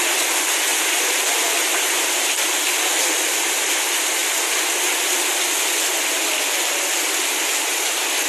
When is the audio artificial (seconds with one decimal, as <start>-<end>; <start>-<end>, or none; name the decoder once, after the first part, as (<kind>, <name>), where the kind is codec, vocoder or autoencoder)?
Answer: 0.7-2.3 (vocoder, BigVGAN v2)